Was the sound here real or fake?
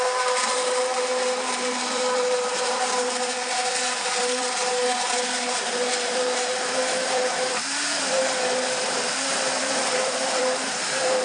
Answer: fake